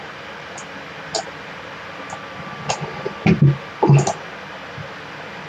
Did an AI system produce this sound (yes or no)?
no